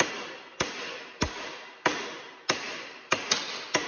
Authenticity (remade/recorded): recorded